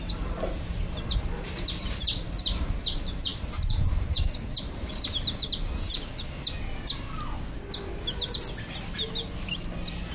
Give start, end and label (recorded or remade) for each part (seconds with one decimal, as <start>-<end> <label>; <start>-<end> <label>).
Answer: 0.0-6.1 remade; 6.1-10.1 recorded